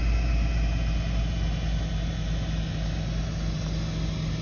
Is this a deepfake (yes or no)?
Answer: no